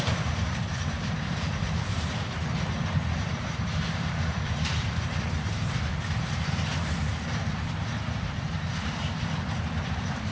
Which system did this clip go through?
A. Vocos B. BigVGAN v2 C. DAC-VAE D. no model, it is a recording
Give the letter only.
B